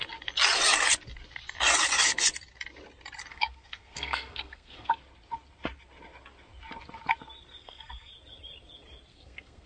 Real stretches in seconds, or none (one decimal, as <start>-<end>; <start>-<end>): 0.0-3.3; 4.9-7.6; 8.1-9.1